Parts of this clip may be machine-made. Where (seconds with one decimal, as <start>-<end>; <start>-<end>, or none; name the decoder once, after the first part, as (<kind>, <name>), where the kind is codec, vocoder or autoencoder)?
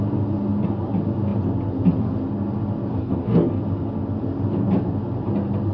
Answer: 3.0-3.6 (codec, DAC)